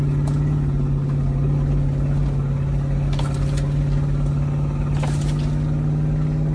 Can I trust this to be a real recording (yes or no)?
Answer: yes